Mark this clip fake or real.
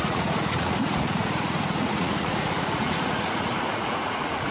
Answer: fake